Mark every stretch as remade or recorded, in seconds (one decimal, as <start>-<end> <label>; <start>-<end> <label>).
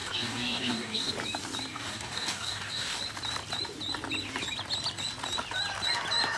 0.0-1.1 remade; 1.1-1.7 recorded; 1.7-3.0 remade; 3.0-6.4 recorded